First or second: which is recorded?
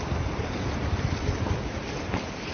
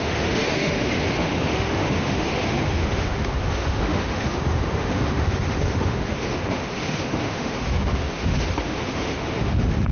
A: first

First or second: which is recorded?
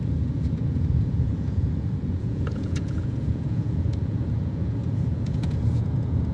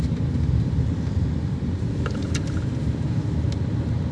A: second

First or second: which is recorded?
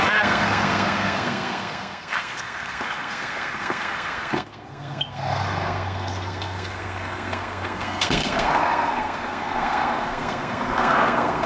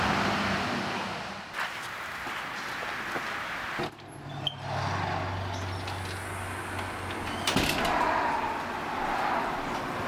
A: second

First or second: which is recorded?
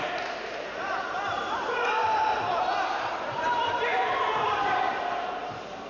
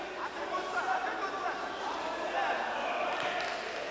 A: second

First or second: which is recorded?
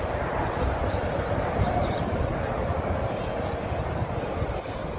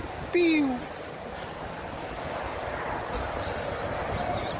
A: second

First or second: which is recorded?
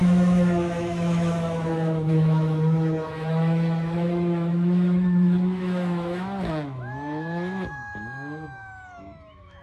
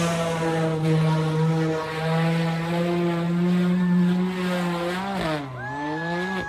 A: second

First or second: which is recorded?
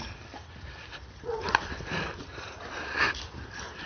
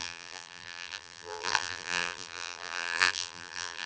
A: first